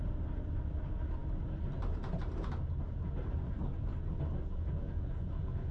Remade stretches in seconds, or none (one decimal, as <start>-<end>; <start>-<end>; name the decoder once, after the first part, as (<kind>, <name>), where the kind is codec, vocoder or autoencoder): 4.5-5.7 (vocoder, Vocos)